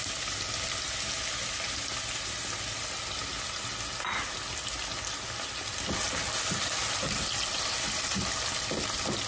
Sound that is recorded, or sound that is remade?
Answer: recorded